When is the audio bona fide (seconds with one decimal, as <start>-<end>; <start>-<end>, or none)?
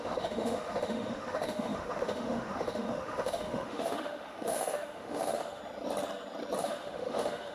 5.6-6.6